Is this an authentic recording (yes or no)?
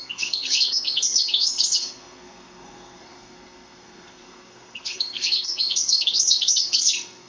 no